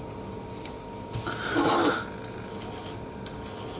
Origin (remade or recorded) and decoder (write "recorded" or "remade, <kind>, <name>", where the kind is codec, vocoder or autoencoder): recorded